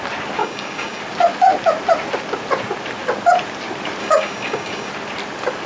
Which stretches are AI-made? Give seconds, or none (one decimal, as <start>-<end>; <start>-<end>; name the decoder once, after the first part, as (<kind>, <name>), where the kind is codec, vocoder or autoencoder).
0.4-1.0 (codec, DAC); 4.0-4.9